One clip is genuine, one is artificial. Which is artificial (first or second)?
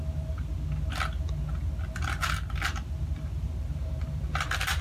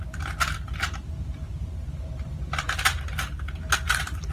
second